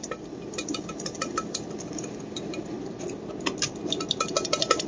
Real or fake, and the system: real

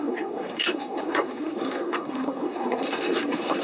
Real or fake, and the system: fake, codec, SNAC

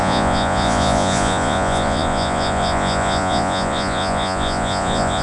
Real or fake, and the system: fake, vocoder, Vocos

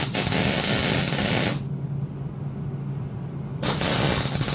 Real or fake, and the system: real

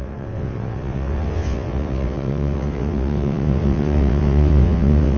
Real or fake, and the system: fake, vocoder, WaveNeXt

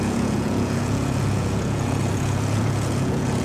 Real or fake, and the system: fake, vocoder, Vocos